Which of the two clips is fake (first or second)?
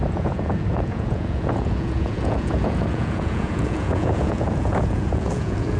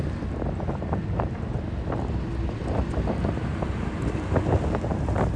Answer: first